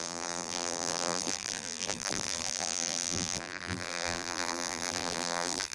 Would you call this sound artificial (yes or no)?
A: yes